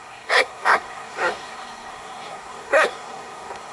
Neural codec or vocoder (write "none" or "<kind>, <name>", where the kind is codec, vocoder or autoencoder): codec, SNAC